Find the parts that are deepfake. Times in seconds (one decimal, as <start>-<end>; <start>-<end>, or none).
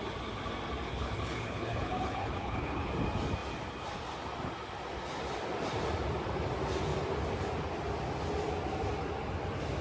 0.9-2.9